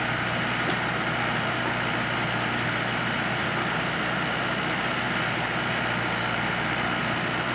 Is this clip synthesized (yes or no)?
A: no